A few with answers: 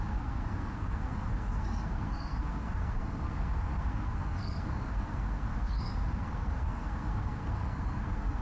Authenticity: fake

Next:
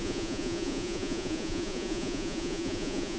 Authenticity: fake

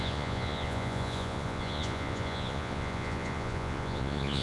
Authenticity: fake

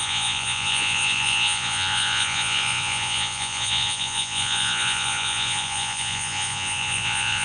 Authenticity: fake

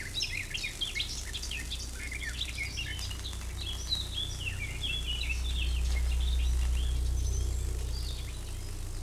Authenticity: real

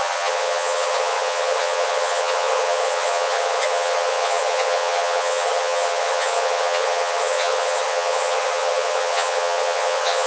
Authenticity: fake